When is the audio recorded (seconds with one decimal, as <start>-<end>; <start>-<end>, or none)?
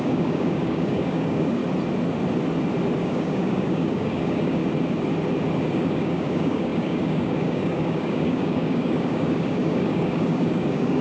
1.6-3.0; 4.6-5.7